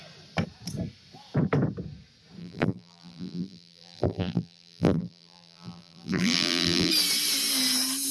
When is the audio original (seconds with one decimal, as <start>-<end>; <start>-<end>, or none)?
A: 0.0-2.4; 6.9-8.1